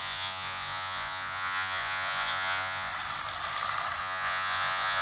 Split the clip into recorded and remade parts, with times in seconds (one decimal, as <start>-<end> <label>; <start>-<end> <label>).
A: 0.0-2.9 remade; 2.9-4.0 recorded; 4.0-5.0 remade